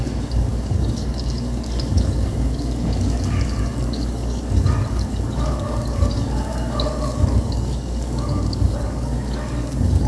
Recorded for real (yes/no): no